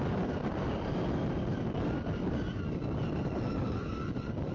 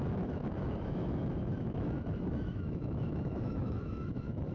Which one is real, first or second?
first